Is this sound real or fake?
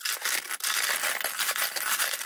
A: real